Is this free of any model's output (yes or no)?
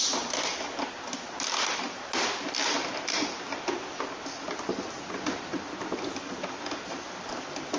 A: yes